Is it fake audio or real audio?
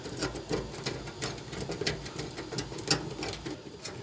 real